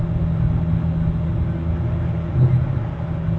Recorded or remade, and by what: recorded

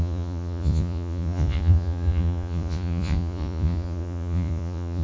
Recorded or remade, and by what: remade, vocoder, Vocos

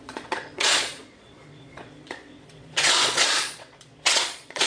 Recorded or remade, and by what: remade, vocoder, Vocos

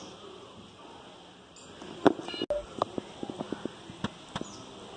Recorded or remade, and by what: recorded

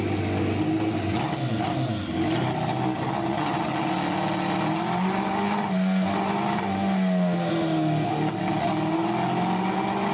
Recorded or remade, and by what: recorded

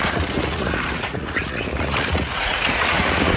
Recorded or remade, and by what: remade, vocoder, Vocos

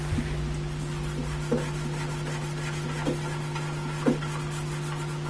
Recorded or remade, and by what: recorded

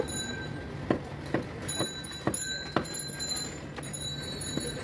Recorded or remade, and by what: recorded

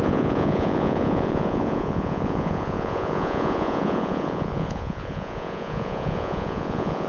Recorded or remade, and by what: remade, vocoder, Vocos